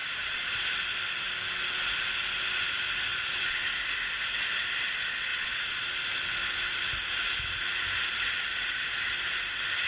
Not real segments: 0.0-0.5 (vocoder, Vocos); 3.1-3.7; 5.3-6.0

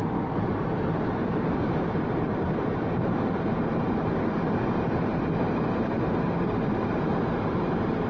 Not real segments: 0.0-8.1 (vocoder, BigVGAN v2)